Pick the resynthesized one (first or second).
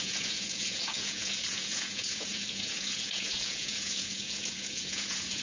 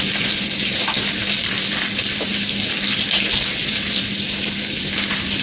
first